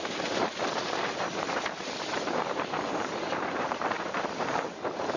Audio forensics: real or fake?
fake